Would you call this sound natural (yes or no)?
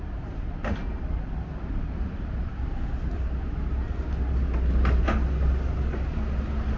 yes